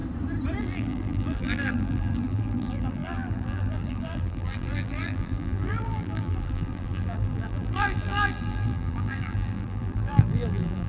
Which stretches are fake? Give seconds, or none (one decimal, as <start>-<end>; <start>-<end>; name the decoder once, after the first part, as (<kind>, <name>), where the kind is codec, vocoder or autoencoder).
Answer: 0.6-10.9 (vocoder, BigVGAN v2)